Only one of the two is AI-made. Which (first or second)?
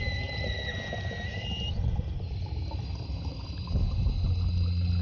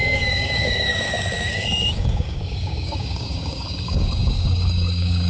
second